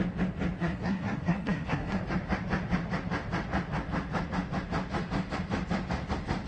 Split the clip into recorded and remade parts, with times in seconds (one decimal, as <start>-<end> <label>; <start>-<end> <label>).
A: 0.0-0.6 recorded; 0.6-2.0 remade; 2.0-6.5 recorded